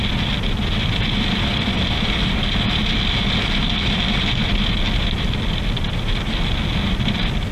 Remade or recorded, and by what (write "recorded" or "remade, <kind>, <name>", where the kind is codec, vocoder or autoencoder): recorded